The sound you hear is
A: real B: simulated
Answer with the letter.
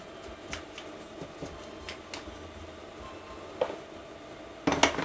A